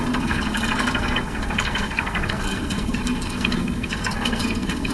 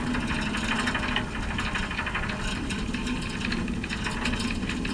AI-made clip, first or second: first